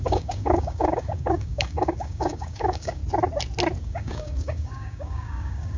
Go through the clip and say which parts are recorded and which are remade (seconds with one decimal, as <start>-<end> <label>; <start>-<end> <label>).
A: 0.0-3.0 remade; 3.0-3.8 recorded; 3.8-5.8 remade